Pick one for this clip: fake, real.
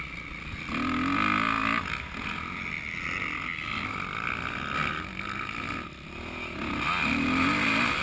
real